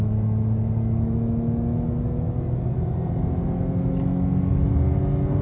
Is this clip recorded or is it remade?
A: recorded